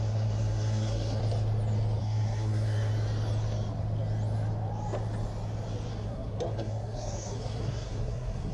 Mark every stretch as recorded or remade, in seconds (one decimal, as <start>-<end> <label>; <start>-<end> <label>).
0.0-1.2 remade; 1.2-2.0 recorded; 2.0-2.9 remade; 2.9-5.9 recorded; 5.9-8.5 remade